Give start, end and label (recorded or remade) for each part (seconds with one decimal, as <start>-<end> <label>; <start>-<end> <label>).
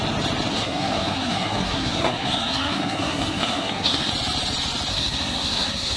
0.0-0.5 recorded; 0.5-4.1 remade; 4.1-4.9 recorded; 4.9-6.0 remade